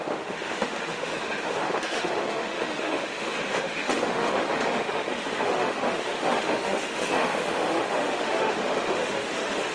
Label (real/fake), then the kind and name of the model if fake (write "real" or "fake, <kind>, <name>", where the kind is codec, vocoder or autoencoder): fake, autoencoder, DAC-VAE